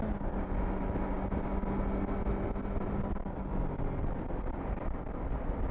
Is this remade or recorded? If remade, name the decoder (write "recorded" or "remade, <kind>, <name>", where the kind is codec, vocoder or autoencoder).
recorded